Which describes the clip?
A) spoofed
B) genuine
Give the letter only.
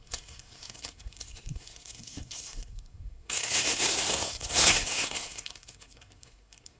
A